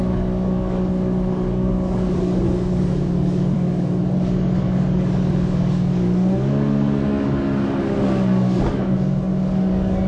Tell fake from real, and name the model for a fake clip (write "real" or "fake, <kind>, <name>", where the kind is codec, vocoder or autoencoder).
fake, codec, DAC